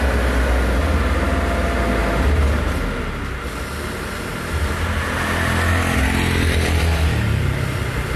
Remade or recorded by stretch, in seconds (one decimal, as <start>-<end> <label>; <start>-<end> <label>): 0.0-2.0 recorded; 2.0-2.7 remade; 2.7-8.2 recorded